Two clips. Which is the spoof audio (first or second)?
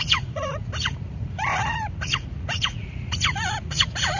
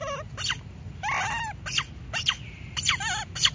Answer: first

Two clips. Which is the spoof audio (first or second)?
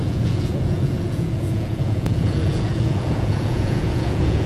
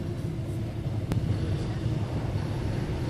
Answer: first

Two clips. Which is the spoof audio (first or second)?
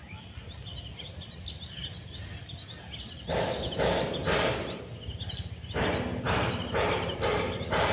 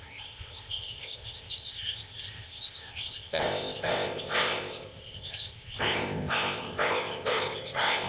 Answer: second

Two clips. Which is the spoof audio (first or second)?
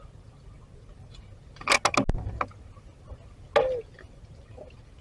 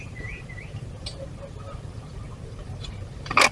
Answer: second